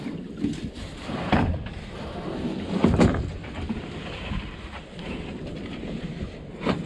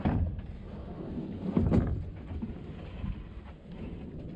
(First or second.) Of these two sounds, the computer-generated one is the first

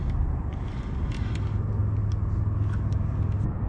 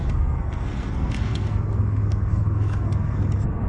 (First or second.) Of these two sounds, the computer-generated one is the second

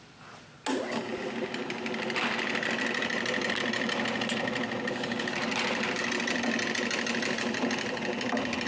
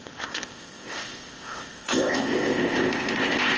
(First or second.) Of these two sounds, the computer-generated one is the second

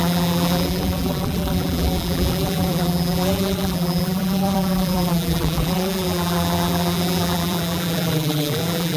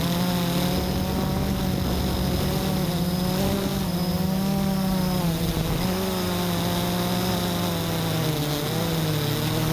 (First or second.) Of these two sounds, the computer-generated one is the first